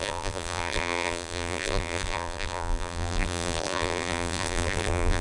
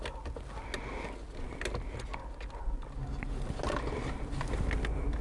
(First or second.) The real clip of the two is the second